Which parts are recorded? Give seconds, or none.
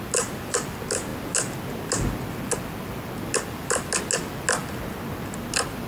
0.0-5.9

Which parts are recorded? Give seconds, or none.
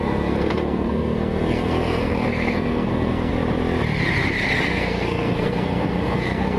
3.3-4.7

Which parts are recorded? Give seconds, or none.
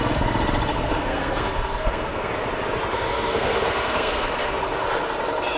0.0-0.7; 2.3-2.9; 4.6-5.6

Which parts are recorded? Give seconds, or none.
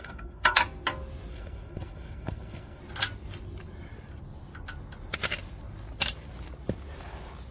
0.6-1.3; 2.8-7.5